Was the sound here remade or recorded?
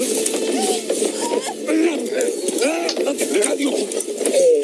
recorded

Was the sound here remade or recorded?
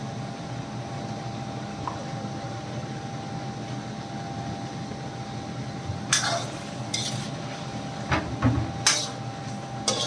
recorded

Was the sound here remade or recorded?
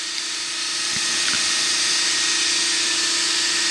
recorded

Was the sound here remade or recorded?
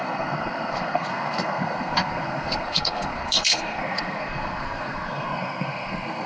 remade